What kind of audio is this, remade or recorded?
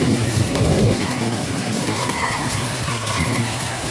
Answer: remade